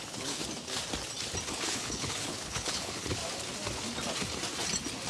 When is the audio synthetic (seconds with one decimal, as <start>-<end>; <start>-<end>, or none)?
0.0-0.4; 1.5-3.2